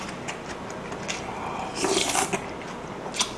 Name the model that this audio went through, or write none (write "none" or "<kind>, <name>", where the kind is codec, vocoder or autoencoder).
none